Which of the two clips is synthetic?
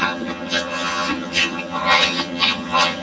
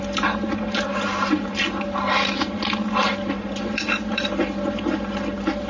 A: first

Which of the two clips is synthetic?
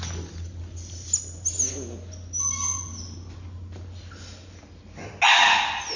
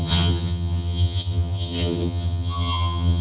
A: second